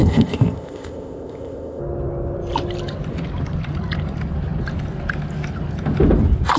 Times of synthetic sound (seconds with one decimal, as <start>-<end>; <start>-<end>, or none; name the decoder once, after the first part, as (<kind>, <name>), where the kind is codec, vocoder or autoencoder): 0.0-1.8 (codec, ZipCodec)